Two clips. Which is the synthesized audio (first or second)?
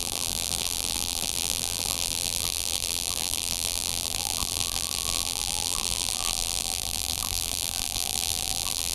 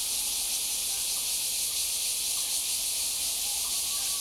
first